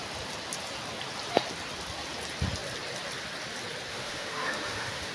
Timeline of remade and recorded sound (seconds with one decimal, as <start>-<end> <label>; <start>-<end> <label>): 0.0-3.9 recorded; 3.9-5.1 remade